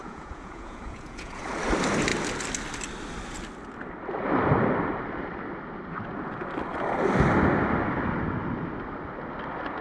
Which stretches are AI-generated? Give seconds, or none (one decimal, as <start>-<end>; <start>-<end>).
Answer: 0.0-1.4